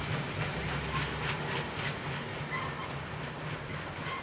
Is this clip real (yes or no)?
yes